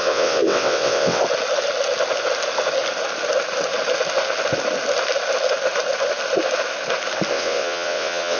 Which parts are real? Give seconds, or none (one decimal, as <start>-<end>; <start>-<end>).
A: 1.2-7.3